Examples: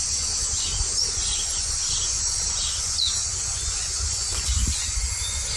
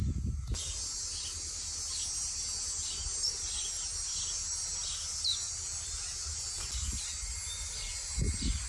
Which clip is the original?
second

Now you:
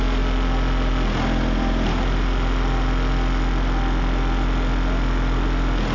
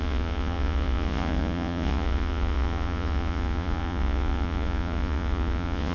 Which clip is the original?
first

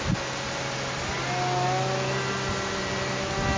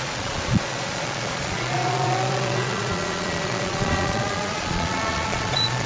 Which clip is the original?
first